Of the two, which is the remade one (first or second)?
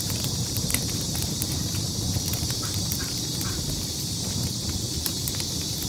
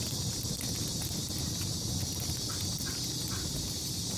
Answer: first